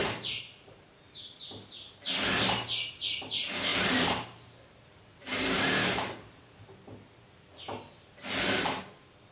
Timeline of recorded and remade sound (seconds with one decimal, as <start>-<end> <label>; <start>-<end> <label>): 0.0-1.3 remade; 1.3-3.7 recorded; 3.7-6.5 remade; 6.5-9.3 recorded

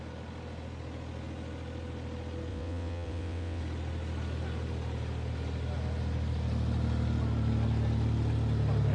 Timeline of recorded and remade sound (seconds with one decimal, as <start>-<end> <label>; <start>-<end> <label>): 0.0-2.5 recorded; 2.5-3.6 remade; 3.6-8.9 recorded

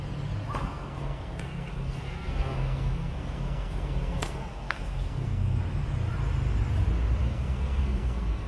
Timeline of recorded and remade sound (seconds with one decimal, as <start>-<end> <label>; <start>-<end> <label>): 0.0-0.6 recorded; 0.6-5.6 remade; 5.6-7.2 recorded; 7.2-8.5 remade

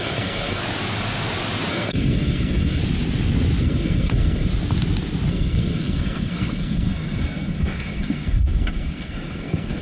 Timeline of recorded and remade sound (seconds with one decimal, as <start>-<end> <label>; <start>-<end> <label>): 0.0-0.6 remade; 0.6-1.7 recorded; 1.7-2.8 remade; 2.8-3.6 recorded; 3.6-4.5 remade; 4.5-5.3 recorded; 5.3-9.8 remade

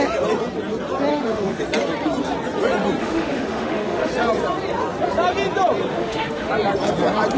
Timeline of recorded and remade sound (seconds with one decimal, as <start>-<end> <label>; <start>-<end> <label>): 0.0-1.1 recorded; 1.1-1.6 remade; 1.6-3.0 recorded; 3.0-4.1 remade; 4.1-5.9 recorded; 5.9-6.5 remade; 6.5-7.4 recorded

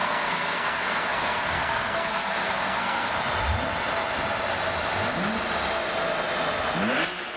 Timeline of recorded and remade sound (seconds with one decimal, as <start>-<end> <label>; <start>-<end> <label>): 0.0-3.1 remade; 3.1-7.4 recorded

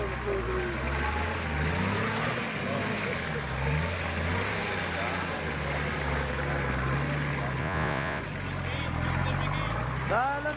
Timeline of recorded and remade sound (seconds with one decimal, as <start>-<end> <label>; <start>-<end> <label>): 0.0-7.6 recorded; 7.6-8.2 remade; 8.2-10.6 recorded